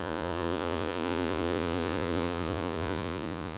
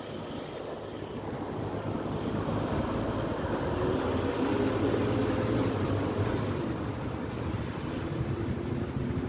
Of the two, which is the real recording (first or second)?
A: second